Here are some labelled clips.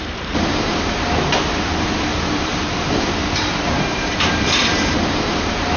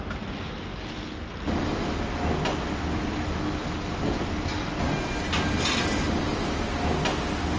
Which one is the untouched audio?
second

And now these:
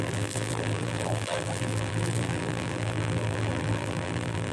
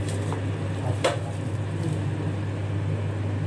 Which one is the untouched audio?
second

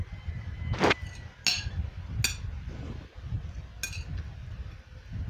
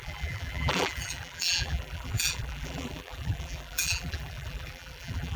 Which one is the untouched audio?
first